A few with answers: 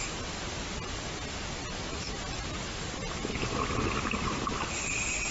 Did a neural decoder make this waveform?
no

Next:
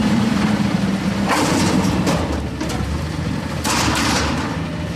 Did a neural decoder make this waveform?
no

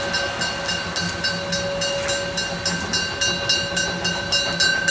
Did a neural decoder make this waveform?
no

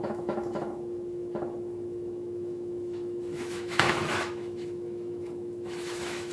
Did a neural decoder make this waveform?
yes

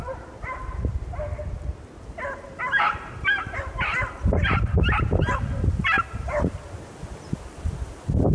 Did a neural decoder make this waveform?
no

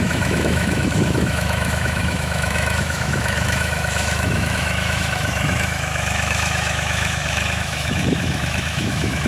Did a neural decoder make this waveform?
yes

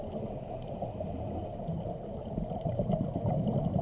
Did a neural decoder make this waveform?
no